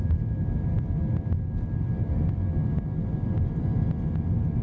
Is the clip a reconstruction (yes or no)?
no